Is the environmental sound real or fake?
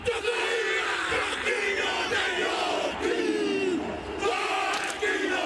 real